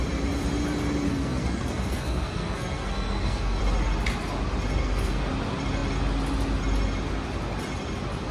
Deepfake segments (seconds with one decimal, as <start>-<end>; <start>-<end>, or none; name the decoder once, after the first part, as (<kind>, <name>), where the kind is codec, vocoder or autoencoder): 1.1-3.6 (codec, SNAC); 4.8-5.3